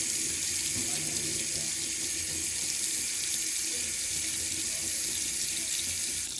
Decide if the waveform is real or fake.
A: real